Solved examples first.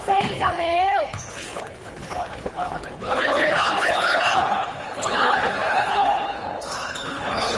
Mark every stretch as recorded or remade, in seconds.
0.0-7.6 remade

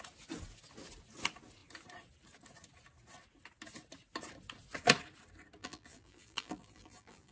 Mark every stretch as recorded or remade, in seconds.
0.0-5.6 recorded; 5.6-7.3 remade

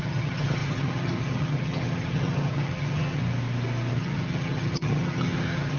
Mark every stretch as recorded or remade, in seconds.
0.0-3.2 remade; 3.2-3.9 recorded; 3.9-5.8 remade

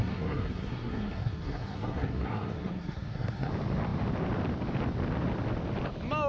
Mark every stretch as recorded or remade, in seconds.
0.0-3.5 remade; 3.5-6.3 recorded